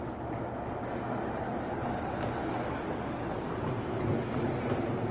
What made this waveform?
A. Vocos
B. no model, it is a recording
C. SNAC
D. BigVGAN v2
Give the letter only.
B